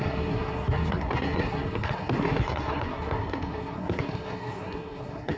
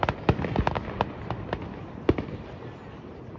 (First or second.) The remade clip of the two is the first